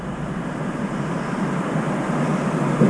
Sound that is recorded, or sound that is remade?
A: recorded